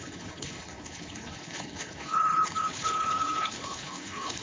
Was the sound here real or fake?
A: fake